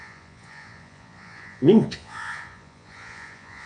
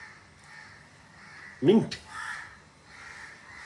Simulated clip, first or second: first